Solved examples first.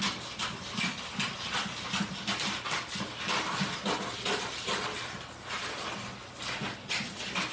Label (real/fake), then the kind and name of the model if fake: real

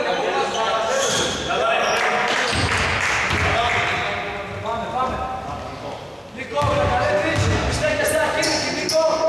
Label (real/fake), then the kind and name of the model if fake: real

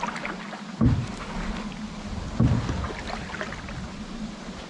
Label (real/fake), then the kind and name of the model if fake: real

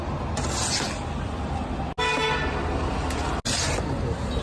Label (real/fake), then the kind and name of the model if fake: real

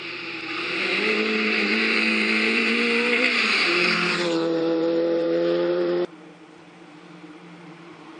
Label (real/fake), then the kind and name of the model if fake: fake, vocoder, BigVGAN v2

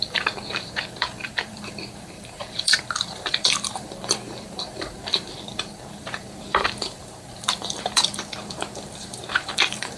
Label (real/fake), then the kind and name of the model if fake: fake, vocoder, BigVGAN v2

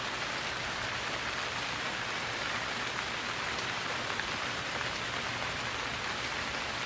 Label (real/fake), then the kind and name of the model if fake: real